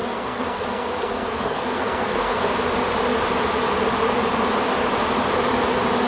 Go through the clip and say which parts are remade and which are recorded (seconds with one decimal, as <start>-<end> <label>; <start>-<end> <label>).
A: 0.0-2.5 remade; 2.5-6.1 recorded